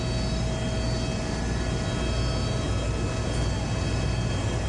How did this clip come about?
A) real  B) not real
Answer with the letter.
A